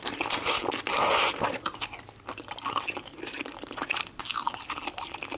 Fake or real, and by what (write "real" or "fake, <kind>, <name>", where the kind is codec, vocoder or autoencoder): real